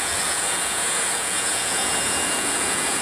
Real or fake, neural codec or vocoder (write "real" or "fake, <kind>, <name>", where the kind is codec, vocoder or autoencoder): fake, vocoder, Vocos